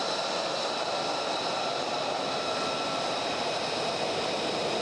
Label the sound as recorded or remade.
recorded